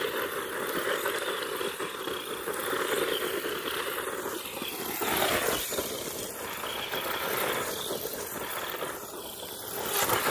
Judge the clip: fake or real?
real